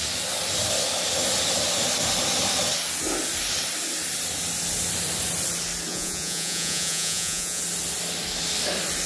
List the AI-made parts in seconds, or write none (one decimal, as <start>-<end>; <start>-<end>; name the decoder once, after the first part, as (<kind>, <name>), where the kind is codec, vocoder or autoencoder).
5.9-7.6 (vocoder, Vocos)